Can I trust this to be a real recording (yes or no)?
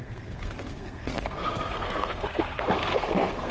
no